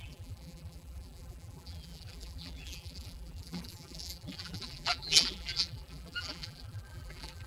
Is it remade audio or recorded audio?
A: remade